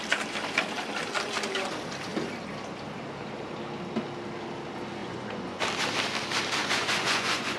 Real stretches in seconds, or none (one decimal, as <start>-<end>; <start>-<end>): 0.0-5.0; 5.6-6.6